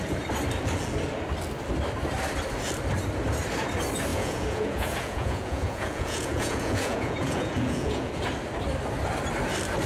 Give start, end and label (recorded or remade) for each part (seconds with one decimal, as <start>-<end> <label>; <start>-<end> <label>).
0.0-4.1 recorded; 4.1-8.1 remade; 8.1-9.9 recorded